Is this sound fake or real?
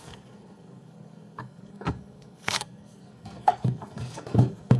fake